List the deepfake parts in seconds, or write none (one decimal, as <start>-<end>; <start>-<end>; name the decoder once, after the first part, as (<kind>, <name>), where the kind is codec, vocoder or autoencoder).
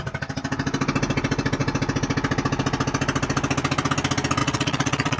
4.4-5.2 (vocoder, WaveNeXt)